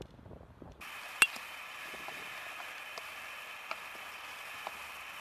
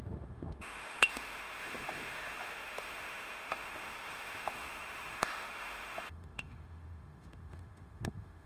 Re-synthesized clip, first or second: second